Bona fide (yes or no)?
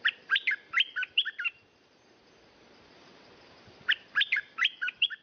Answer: no